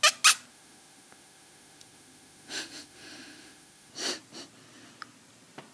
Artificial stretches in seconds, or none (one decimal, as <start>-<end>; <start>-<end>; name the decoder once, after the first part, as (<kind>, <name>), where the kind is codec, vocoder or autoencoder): 0.5-3.9 (autoencoder, DAC-VAE)